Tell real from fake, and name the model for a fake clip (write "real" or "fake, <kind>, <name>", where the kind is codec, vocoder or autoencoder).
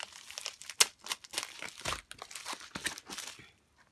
real